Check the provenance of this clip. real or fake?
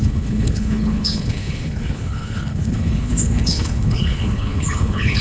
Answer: fake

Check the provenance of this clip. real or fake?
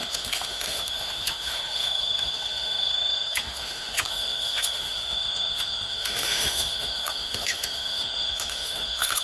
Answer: fake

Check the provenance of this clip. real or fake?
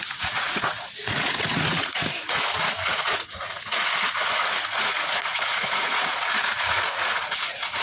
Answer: fake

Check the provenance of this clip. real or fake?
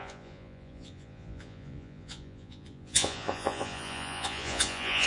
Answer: fake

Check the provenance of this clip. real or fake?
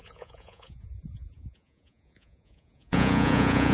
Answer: fake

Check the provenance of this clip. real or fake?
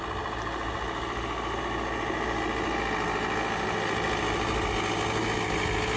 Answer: real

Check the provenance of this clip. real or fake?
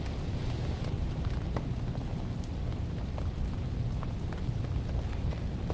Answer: real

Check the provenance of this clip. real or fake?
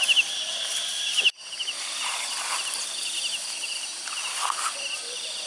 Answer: real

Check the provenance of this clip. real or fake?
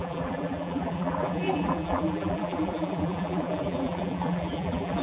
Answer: fake